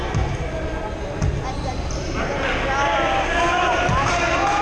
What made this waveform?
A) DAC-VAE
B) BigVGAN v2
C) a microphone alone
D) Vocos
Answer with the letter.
C